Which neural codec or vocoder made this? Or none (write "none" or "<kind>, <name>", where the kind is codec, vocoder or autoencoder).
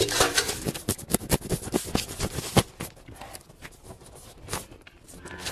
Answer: none